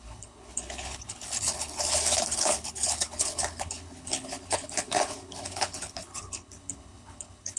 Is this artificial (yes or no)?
yes